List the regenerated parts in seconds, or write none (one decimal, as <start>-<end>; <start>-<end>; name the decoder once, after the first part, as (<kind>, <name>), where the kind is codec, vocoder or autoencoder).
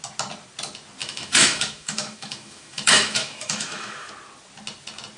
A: 1.0-4.1 (autoencoder, DAC-VAE)